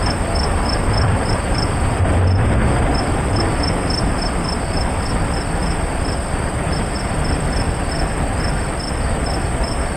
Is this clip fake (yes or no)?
yes